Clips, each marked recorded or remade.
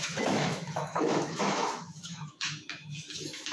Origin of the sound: remade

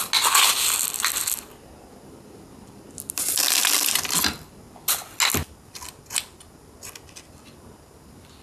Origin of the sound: recorded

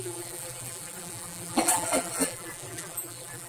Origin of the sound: remade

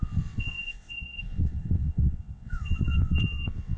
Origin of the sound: remade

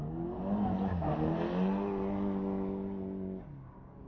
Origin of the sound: recorded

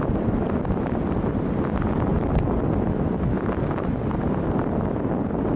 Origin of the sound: recorded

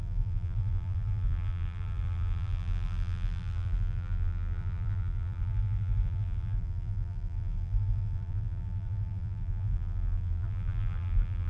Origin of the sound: remade